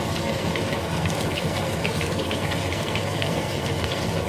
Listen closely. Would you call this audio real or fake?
fake